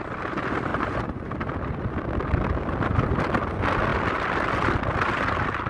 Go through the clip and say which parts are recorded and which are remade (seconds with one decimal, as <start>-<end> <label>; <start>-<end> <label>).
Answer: 0.0-0.7 recorded; 0.7-1.3 remade; 1.3-5.7 recorded